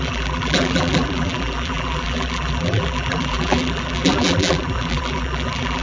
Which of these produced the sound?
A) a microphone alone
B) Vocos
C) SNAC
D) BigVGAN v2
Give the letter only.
D